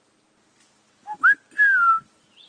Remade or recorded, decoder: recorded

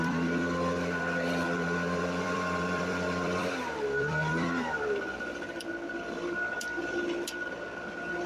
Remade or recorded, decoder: remade, vocoder, BigVGAN v2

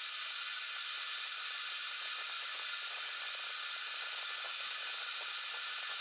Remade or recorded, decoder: recorded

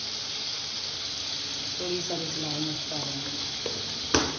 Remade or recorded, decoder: recorded